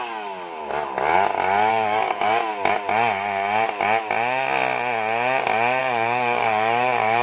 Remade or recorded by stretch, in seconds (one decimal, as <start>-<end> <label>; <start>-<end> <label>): 0.0-0.6 remade; 0.6-1.7 recorded; 1.7-2.5 remade; 2.5-5.8 recorded; 5.8-7.2 remade